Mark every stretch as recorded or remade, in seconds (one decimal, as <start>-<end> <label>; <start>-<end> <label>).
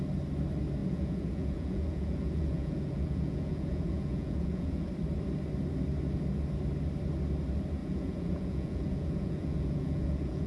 0.0-0.8 recorded; 0.8-4.9 remade; 4.9-7.8 recorded; 7.8-10.5 remade